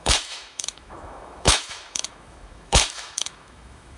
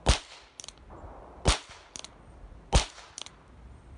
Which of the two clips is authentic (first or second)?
second